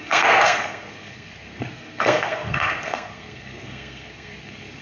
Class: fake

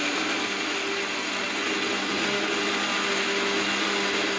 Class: real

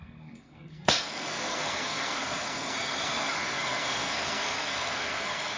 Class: fake